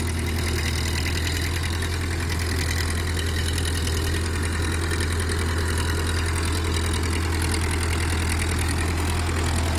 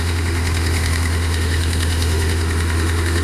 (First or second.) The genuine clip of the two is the first